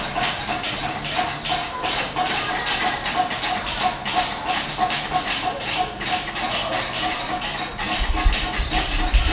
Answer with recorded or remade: recorded